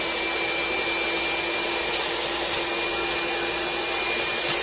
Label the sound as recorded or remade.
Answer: recorded